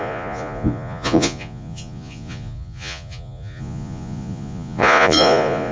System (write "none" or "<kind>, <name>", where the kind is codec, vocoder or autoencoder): vocoder, Vocos